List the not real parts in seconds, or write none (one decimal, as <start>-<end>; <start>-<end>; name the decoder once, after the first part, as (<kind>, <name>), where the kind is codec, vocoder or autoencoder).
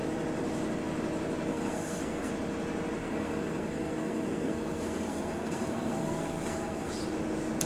1.5-2.3 (codec, SNAC); 3.0-6.9